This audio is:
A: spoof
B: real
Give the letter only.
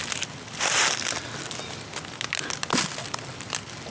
B